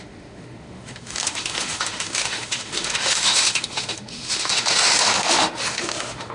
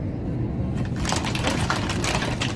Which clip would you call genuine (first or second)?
second